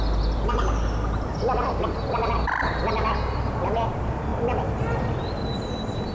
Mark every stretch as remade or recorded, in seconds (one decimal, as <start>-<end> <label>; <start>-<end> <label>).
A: 0.0-6.1 recorded